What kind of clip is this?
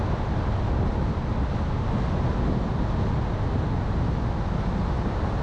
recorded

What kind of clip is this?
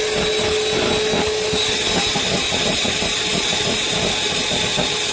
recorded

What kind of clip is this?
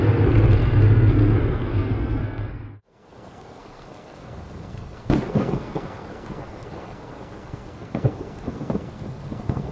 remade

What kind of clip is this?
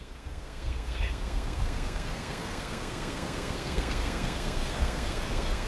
remade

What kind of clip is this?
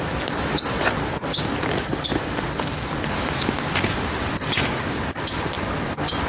recorded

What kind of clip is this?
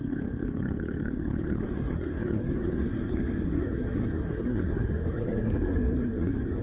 remade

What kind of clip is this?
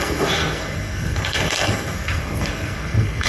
remade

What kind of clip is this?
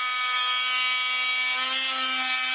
recorded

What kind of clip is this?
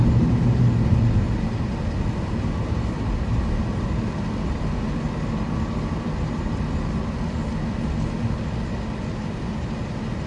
recorded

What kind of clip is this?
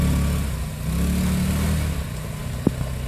recorded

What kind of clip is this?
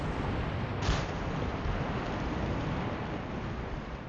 recorded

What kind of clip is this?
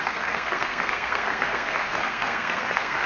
remade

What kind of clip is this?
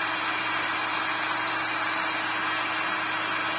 recorded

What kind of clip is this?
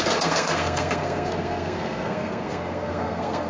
remade